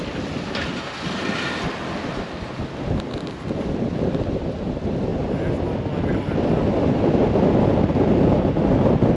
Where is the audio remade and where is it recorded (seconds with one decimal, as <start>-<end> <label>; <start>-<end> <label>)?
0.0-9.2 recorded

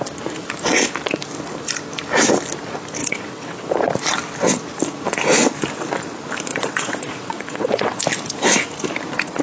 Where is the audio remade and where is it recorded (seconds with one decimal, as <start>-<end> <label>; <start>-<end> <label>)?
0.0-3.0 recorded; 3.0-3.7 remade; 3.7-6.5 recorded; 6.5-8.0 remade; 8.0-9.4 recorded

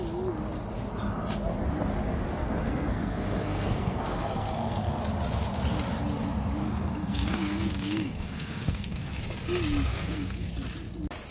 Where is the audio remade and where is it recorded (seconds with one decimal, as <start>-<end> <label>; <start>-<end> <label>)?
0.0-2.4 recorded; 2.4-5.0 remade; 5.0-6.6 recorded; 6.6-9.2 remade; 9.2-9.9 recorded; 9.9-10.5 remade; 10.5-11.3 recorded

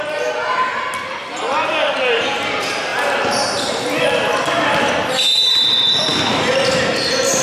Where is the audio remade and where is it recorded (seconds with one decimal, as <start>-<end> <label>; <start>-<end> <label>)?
0.0-7.4 recorded

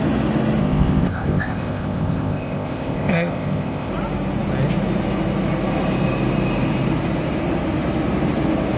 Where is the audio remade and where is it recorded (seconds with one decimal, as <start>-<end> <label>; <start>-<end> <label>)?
0.0-0.6 recorded; 0.6-3.9 remade; 3.9-8.8 recorded